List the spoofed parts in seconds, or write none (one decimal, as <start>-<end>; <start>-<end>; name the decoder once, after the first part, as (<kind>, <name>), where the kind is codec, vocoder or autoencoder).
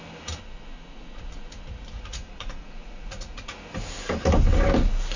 0.4-3.5 (vocoder, Vocos)